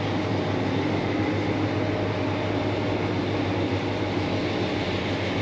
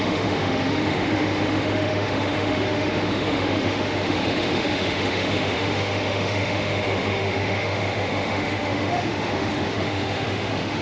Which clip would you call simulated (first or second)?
second